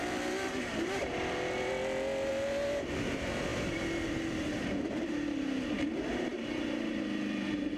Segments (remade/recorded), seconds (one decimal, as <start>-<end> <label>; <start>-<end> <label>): 0.0-1.7 remade; 1.7-2.3 recorded; 2.3-7.8 remade